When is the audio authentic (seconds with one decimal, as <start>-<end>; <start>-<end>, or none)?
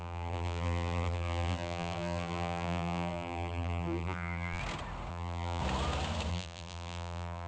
4.6-5.1; 5.6-6.3